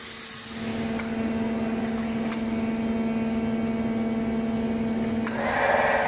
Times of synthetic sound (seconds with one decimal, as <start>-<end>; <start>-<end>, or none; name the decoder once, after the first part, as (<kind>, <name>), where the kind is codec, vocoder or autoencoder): none